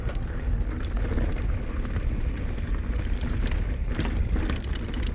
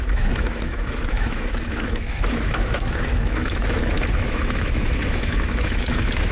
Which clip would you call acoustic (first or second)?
first